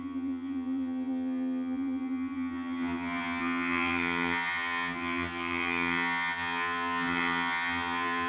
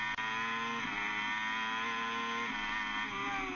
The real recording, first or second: second